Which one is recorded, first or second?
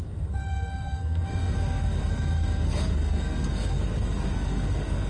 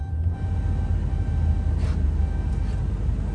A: second